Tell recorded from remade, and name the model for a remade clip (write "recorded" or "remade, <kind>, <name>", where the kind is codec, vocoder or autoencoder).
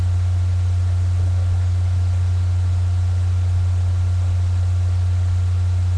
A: recorded